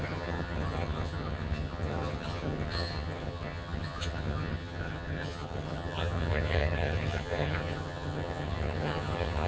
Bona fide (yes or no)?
no